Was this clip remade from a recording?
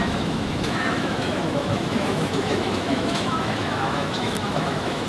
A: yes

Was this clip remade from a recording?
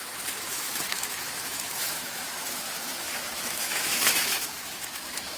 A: yes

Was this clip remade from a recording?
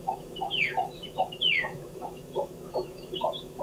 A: yes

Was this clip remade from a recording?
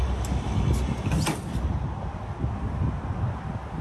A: no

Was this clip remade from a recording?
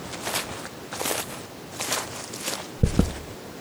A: no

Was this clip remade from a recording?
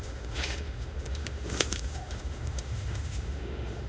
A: yes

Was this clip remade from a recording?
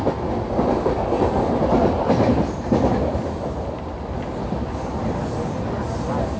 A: no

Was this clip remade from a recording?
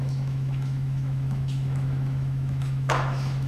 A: yes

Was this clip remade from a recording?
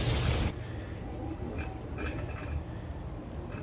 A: no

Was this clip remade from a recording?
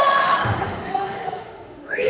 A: yes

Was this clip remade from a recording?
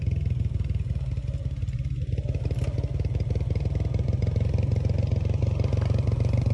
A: no